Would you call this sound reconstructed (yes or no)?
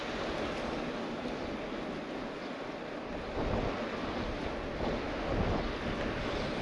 no